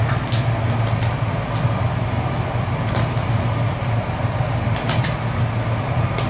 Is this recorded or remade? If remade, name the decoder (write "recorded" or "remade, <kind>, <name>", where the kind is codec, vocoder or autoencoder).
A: recorded